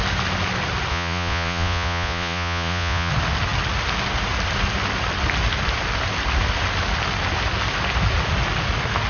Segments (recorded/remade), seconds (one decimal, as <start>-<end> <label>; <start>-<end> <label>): 0.0-0.9 recorded; 0.9-3.1 remade; 3.1-9.1 recorded